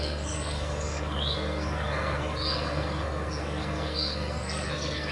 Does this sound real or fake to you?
fake